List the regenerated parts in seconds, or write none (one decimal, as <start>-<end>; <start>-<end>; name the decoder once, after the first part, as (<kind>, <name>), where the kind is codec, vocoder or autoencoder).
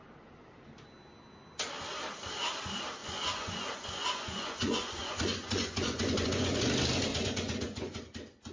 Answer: 3.0-6.6 (vocoder, Vocos); 7.1-8.0